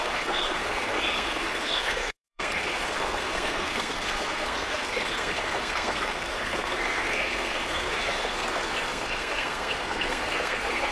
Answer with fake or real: fake